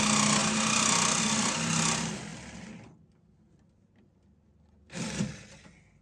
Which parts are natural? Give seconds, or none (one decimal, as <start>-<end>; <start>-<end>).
0.0-6.0